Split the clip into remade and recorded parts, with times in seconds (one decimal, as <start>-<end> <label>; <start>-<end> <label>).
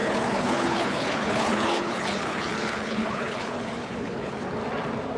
0.0-4.6 remade; 4.6-5.2 recorded